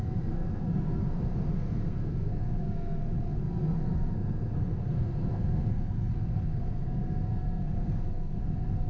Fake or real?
fake